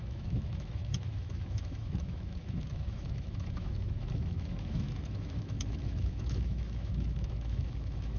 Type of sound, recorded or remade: remade